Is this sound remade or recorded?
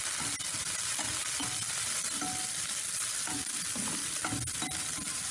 recorded